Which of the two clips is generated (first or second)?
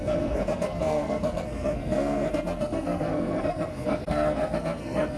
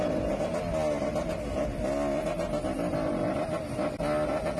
first